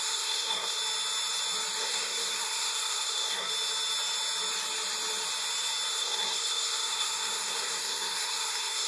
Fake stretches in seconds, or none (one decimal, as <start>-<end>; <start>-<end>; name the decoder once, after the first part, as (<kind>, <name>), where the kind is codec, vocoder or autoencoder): 0.0-0.8 (codec, SNAC); 1.8-3.5; 5.9-8.9